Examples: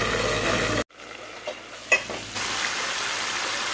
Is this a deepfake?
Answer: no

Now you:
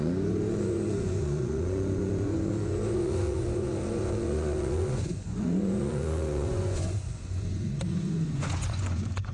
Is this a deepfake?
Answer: yes